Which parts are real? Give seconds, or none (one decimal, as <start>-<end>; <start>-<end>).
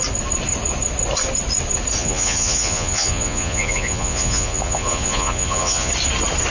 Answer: 0.0-2.0; 5.9-6.5